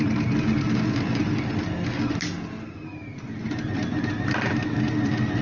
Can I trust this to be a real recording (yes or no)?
yes